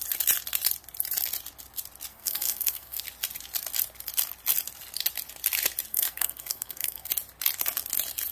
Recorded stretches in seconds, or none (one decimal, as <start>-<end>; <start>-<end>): 0.0-2.1; 3.0-5.9; 7.1-8.3